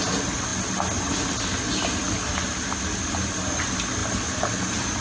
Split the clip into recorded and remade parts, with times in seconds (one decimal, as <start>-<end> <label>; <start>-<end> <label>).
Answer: 0.0-4.0 recorded; 4.0-5.0 remade